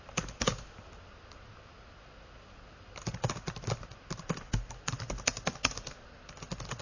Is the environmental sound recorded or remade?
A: recorded